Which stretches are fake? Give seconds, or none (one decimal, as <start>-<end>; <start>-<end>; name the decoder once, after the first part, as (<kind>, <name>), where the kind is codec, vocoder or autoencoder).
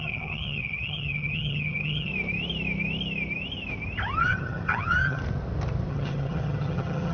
0.0-2.1 (vocoder, HiFi-GAN); 4.2-5.2; 5.9-7.1